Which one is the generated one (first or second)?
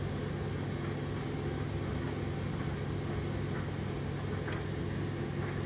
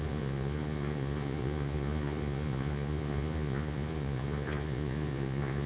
second